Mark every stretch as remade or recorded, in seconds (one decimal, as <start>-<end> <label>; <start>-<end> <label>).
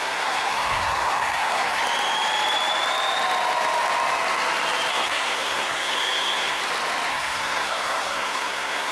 0.0-1.8 remade; 1.8-4.9 recorded; 4.9-6.6 remade; 6.6-7.1 recorded; 7.1-8.9 remade